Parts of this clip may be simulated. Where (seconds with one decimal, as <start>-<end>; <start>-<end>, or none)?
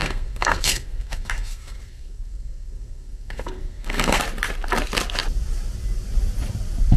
0.0-4.2